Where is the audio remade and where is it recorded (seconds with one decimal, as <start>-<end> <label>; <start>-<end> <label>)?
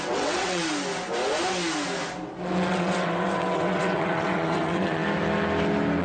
0.0-0.6 remade; 0.6-2.7 recorded; 2.7-5.0 remade; 5.0-6.0 recorded